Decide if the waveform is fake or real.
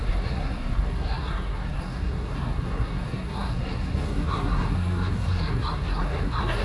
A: fake